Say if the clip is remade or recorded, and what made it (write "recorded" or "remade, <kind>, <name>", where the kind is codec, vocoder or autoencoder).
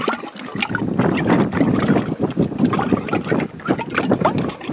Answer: recorded